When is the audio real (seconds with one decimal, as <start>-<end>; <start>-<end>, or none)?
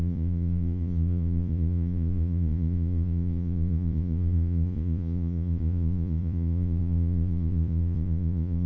none